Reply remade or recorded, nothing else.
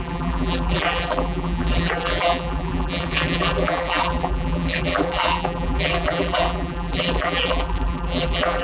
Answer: remade